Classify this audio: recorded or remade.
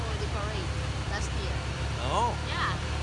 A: recorded